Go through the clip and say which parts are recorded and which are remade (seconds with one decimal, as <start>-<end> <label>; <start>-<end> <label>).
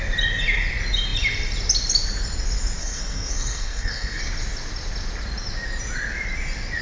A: 0.0-2.8 recorded; 2.8-4.2 remade; 4.2-6.8 recorded